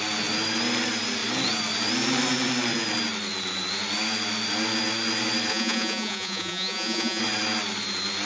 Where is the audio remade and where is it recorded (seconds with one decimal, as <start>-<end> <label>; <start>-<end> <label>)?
0.0-5.5 recorded; 5.5-7.2 remade; 7.2-8.3 recorded